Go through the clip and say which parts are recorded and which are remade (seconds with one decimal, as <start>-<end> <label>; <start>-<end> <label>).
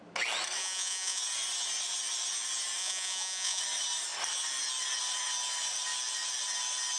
0.0-0.6 recorded; 0.6-1.2 remade; 1.2-2.8 recorded; 2.8-3.6 remade; 3.6-7.0 recorded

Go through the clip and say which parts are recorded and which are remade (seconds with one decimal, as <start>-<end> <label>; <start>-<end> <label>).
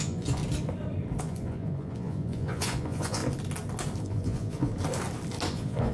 0.0-0.4 remade; 0.4-1.2 recorded; 1.2-3.2 remade; 3.2-4.0 recorded; 4.0-4.7 remade; 4.7-5.5 recorded; 5.5-5.9 remade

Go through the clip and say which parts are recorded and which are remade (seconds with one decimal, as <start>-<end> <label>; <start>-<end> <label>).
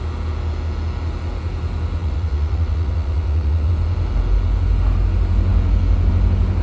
0.0-2.0 recorded; 2.0-3.7 remade; 3.7-6.6 recorded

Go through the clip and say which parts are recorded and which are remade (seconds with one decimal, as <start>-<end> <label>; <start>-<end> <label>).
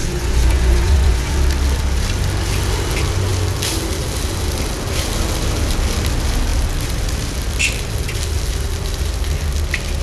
0.0-1.3 remade; 1.3-10.0 recorded